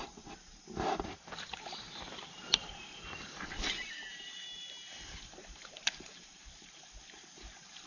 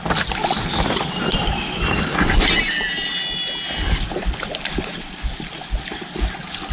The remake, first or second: first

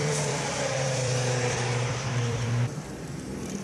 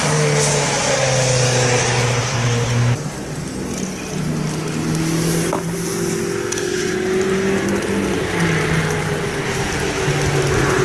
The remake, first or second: first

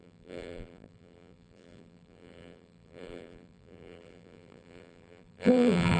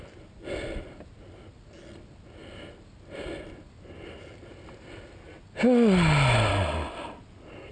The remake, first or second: first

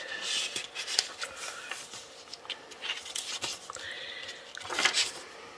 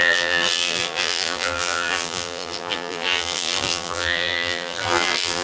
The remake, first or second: second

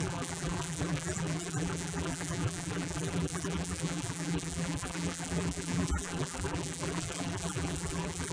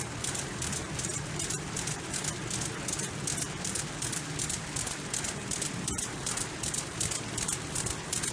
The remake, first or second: first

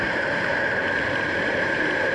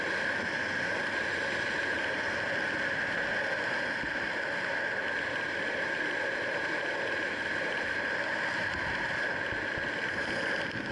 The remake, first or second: first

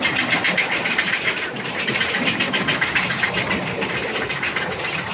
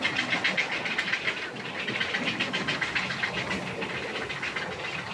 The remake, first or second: first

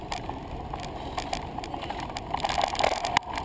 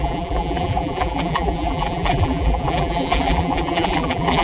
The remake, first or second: second